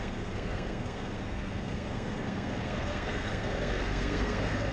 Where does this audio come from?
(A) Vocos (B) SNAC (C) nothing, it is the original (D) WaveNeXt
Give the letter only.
B